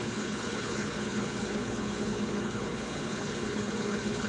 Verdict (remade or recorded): remade